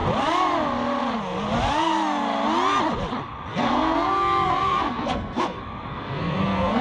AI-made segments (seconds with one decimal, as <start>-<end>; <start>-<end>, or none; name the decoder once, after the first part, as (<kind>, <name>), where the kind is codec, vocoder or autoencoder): 3.5-6.8 (codec, SNAC)